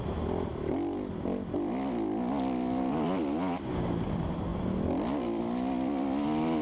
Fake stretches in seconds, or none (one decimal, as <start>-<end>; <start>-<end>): none